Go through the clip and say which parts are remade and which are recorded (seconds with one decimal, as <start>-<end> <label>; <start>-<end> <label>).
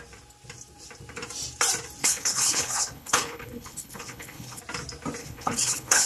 0.0-2.0 recorded; 2.0-4.6 remade; 4.6-5.2 recorded; 5.2-6.1 remade